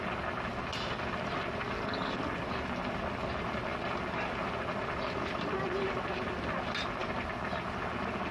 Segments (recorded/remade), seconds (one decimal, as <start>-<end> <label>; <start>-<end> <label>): 0.0-8.3 recorded